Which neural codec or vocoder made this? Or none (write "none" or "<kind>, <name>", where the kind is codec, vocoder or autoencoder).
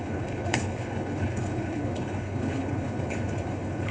codec, HILCodec